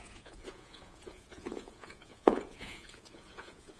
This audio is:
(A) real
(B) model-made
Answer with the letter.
B